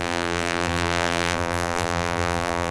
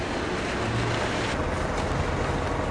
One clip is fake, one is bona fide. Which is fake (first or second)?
first